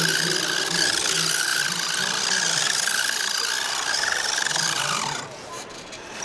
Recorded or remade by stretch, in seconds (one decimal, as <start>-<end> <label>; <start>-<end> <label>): 0.0-6.2 recorded